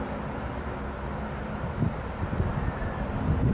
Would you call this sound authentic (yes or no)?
yes